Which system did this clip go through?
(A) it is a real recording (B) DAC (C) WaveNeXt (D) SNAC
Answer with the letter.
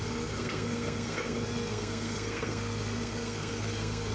D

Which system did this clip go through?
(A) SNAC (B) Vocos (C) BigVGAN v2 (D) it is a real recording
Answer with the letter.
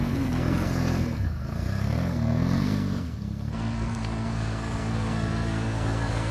A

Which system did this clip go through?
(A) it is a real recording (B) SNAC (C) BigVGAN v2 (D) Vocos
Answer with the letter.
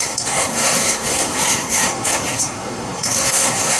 B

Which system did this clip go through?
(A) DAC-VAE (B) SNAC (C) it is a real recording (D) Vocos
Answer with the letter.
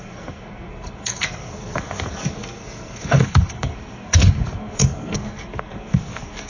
B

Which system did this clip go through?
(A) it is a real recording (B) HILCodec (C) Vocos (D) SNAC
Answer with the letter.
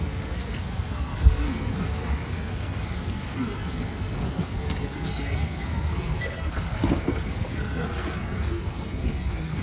D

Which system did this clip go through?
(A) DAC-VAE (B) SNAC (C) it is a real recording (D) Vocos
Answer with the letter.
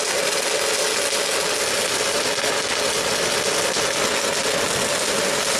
C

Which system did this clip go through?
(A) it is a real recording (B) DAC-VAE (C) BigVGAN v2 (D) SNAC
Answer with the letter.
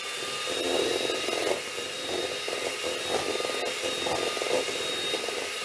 A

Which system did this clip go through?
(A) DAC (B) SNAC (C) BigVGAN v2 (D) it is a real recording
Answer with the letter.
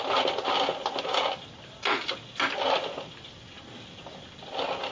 D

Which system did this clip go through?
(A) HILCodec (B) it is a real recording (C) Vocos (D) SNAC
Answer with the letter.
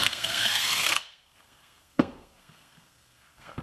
D